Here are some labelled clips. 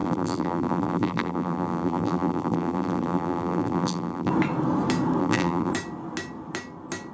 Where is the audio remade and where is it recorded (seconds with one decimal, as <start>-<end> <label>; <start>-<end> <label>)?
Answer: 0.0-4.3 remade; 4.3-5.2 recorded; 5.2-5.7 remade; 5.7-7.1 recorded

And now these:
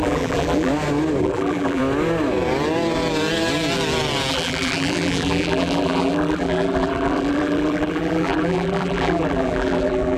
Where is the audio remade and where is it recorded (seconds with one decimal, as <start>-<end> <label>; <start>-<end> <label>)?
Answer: 0.0-0.7 remade; 0.7-1.2 recorded; 1.2-1.8 remade; 1.8-4.3 recorded; 4.3-10.2 remade

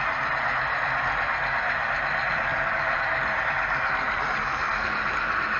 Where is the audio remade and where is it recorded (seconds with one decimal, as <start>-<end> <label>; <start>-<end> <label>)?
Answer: 0.0-2.5 recorded; 2.5-3.4 remade; 3.4-5.6 recorded